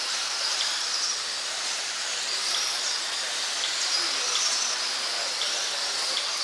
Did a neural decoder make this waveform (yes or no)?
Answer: no